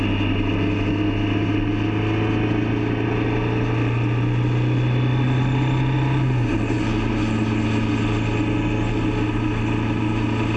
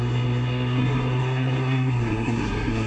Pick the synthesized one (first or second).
second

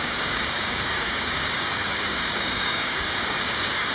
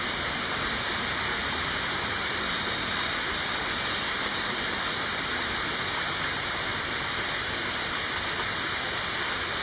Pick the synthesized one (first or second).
first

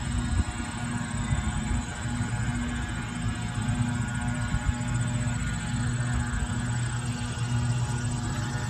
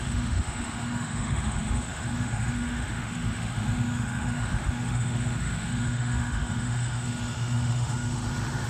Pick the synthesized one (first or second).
second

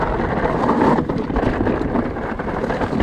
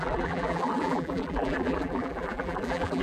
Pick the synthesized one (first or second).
second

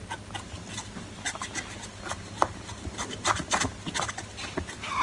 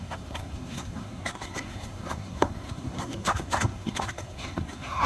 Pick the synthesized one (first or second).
second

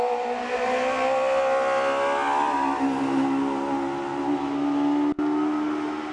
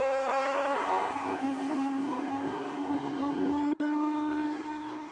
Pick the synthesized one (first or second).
second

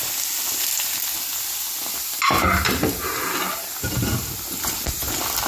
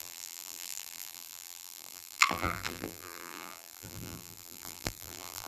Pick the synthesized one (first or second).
second